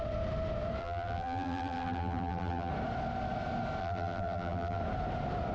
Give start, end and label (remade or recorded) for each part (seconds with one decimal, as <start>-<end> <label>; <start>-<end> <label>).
0.0-0.8 recorded; 0.8-2.7 remade; 2.7-3.8 recorded; 3.8-4.8 remade; 4.8-5.5 recorded